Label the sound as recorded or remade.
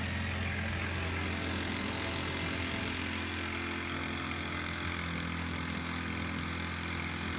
recorded